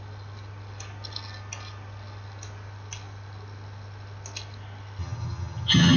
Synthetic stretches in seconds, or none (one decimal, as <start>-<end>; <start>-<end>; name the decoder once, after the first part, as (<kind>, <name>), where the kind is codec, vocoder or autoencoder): 5.0-6.0 (vocoder, HiFi-GAN)